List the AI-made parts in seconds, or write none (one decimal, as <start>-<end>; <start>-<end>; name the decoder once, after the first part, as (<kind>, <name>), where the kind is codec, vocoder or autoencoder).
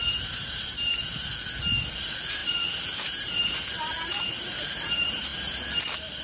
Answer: 0.0-1.3 (vocoder, BigVGAN v2); 1.9-6.2